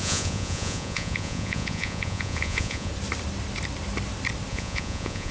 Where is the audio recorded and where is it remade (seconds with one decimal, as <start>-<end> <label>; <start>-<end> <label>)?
0.0-2.9 remade; 2.9-4.5 recorded; 4.5-5.3 remade